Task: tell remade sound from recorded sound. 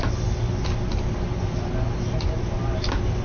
recorded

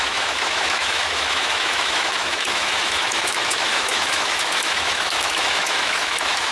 remade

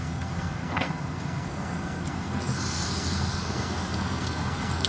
remade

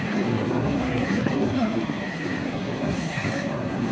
remade